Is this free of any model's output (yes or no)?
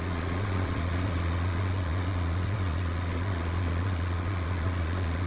no